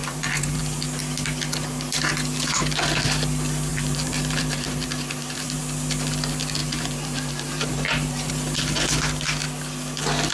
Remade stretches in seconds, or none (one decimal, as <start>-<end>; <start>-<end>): 0.0-0.6; 3.7-5.6; 6.6-8.3